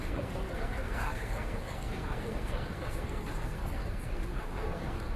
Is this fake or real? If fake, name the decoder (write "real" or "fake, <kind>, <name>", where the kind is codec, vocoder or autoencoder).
fake, codec, SNAC